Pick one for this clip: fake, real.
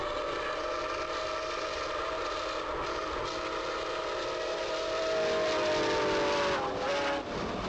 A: real